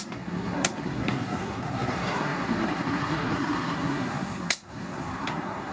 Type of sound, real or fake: fake